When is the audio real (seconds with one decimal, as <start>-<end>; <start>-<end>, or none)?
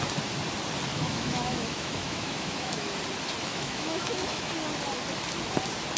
0.0-0.9; 2.9-3.5; 4.5-6.0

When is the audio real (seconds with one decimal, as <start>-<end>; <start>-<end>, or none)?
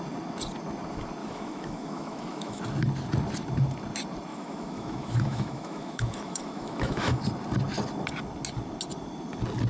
0.0-1.2; 2.6-4.3; 7.2-9.7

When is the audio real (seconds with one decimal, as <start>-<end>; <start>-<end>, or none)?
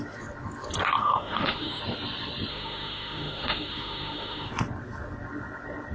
0.0-1.0; 1.8-2.5; 4.5-5.9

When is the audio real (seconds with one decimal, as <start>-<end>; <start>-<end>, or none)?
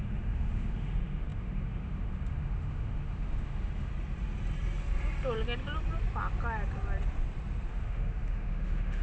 3.9-7.7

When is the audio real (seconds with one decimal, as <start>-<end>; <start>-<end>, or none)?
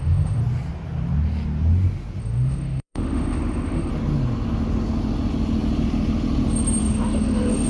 0.4-2.2; 3.9-6.8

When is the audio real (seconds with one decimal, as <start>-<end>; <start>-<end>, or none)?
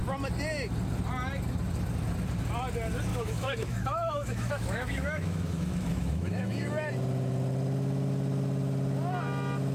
0.0-3.1; 6.9-9.7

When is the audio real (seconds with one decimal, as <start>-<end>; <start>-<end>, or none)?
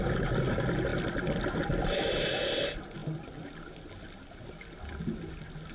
0.0-5.7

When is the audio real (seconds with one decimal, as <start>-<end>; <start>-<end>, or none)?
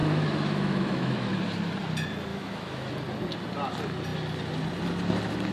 1.3-2.3; 2.9-5.5